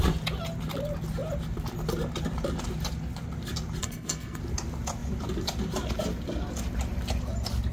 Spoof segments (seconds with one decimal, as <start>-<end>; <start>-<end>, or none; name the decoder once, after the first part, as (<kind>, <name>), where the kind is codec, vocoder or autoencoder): 3.8-4.4 (codec, SNAC)